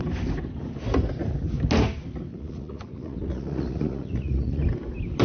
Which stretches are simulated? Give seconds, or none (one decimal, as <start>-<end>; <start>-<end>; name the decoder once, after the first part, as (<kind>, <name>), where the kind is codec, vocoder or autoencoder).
2.3-4.6 (vocoder, Vocos)